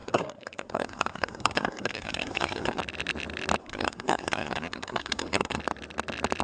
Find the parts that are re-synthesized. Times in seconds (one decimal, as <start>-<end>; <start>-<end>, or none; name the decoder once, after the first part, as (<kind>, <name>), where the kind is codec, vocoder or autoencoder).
0.0-2.8 (codec, SNAC); 3.6-5.6